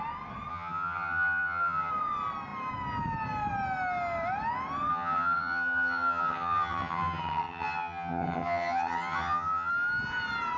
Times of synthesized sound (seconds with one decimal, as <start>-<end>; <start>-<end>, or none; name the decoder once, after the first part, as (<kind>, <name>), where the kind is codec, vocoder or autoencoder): 0.5-1.9 (vocoder, HiFi-GAN); 4.9-9.7